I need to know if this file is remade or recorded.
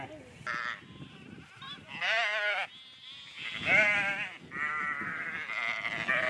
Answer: recorded